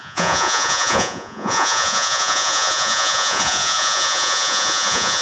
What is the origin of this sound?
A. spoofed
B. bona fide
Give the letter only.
A